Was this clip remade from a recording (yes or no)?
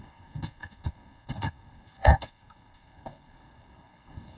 yes